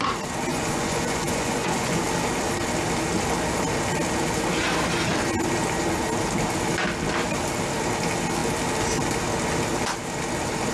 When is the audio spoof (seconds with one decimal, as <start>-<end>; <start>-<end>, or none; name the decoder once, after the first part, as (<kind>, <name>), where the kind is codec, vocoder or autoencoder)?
0.5-2.0 (vocoder, Vocos)